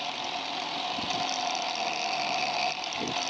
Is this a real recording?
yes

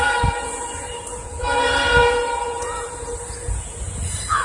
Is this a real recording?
no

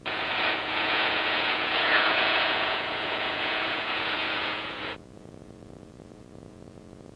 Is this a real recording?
no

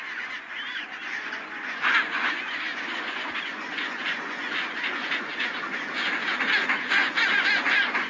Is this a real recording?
no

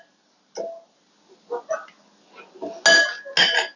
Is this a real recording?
yes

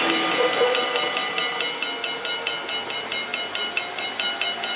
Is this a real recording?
yes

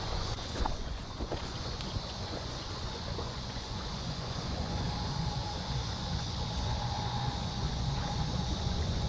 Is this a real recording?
no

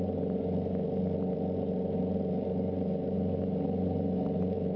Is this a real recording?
yes